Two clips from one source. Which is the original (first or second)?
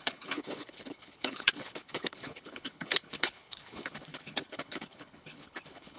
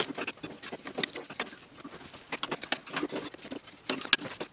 second